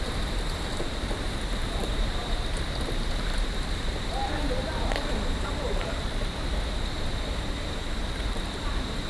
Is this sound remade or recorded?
remade